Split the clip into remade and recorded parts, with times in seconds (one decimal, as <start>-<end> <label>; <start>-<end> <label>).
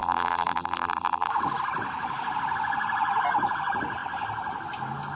0.0-1.3 remade; 1.3-5.2 recorded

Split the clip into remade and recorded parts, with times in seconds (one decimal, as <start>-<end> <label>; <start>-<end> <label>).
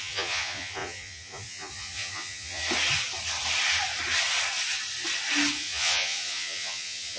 0.0-2.6 remade; 2.6-5.5 recorded; 5.5-7.2 remade